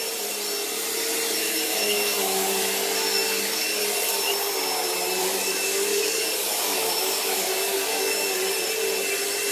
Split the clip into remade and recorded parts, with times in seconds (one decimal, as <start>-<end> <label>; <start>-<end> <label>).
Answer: 0.0-1.4 recorded; 1.4-3.8 remade; 3.8-5.2 recorded; 5.2-8.4 remade; 8.4-9.5 recorded